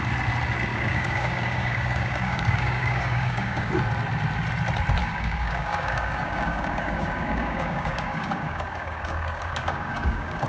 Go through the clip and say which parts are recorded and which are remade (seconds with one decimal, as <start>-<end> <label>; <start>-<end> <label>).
0.0-0.7 recorded; 0.7-3.7 remade; 3.7-5.0 recorded; 5.0-10.5 remade